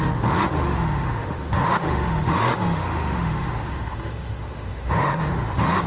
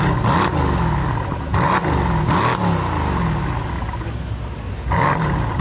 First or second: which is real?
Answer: second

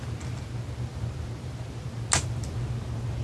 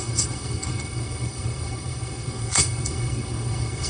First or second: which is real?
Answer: first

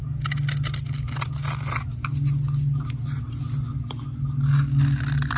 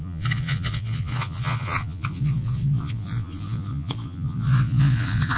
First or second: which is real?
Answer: first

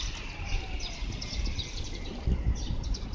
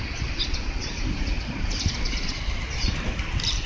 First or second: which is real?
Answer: second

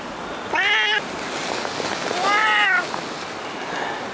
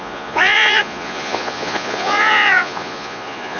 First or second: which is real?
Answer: first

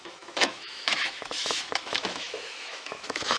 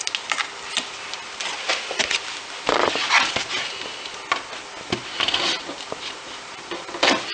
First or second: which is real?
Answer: second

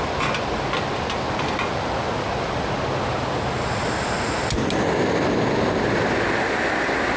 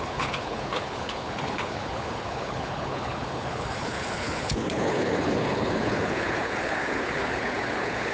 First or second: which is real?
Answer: first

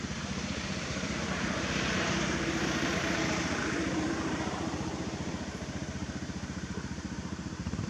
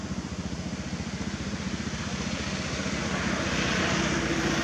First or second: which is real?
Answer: second